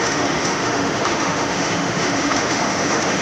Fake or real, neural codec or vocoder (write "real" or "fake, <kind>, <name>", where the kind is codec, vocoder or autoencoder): fake, autoencoder, DAC-VAE